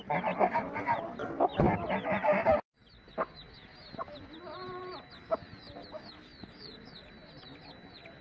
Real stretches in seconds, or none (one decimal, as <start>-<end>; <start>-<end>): 0.0-6.4; 7.1-8.2